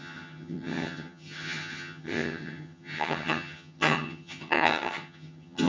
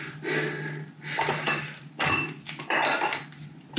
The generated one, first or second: first